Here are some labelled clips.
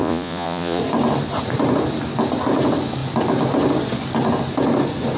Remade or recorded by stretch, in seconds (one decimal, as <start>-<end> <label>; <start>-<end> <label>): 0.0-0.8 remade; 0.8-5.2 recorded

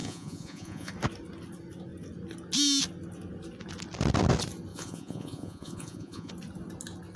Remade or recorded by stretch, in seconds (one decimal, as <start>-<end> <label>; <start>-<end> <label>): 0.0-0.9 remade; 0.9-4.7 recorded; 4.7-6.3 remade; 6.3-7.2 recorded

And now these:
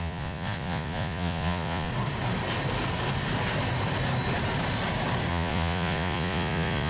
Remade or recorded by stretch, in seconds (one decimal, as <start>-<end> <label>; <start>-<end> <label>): 0.0-1.9 remade; 1.9-5.3 recorded; 5.3-6.9 remade

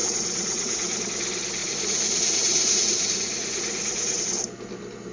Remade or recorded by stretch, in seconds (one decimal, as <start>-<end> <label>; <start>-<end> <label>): 0.0-1.0 remade; 1.0-1.6 recorded; 1.6-4.2 remade; 4.2-5.1 recorded

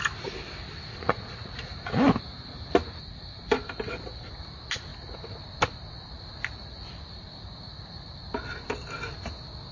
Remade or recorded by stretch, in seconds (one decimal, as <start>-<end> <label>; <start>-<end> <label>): 0.0-0.9 recorded; 0.9-1.9 remade; 1.9-9.7 recorded

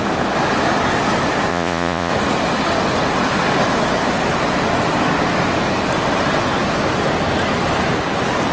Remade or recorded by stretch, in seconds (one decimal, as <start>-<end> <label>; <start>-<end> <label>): 0.0-1.5 recorded; 1.5-2.1 remade; 2.1-8.5 recorded